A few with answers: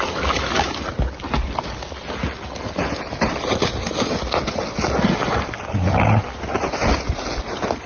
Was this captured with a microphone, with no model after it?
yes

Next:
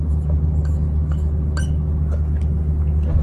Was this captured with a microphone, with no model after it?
yes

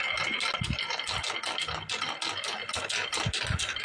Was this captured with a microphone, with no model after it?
yes